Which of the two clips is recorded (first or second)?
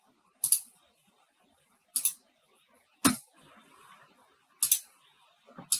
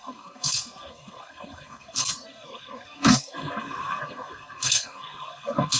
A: first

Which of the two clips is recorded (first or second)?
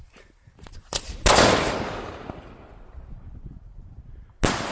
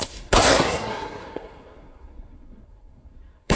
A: first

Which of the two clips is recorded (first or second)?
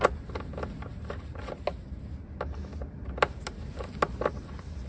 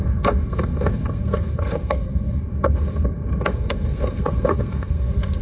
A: first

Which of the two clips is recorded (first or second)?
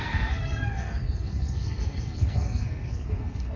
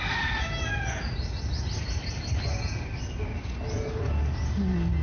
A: second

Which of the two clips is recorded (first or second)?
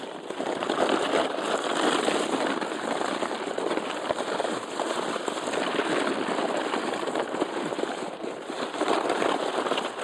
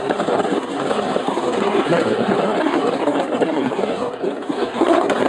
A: first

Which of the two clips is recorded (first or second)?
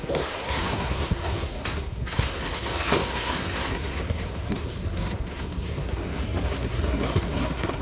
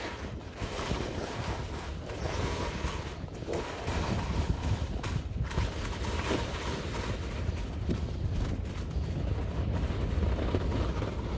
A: second